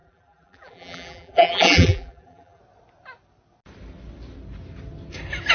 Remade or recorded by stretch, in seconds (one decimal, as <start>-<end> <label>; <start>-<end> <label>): 0.0-2.6 remade; 2.6-5.5 recorded